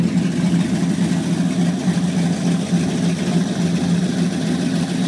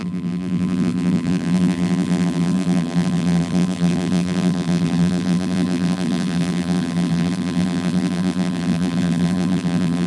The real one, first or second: first